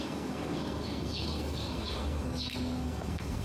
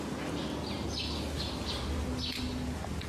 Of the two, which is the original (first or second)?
second